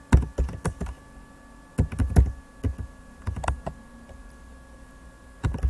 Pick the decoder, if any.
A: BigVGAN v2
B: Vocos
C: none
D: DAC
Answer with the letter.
C